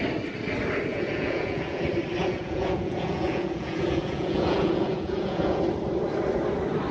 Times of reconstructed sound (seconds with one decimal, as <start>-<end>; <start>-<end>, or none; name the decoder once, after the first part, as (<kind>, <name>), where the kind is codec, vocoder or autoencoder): 0.9-1.8 (vocoder, Vocos); 2.2-5.6